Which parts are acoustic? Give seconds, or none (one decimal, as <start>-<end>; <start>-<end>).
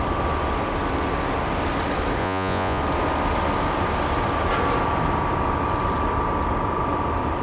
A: 0.0-2.2; 2.8-7.4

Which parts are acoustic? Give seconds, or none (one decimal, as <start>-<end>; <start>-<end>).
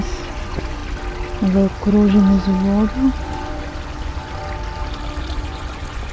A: 0.8-3.2; 4.4-5.2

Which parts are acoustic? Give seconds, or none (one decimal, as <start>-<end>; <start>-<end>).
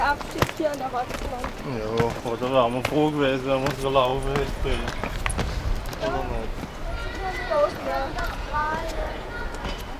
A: 0.0-7.0; 9.4-10.0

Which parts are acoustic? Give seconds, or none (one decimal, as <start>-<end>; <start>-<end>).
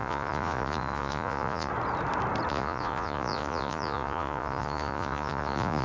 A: 1.7-2.5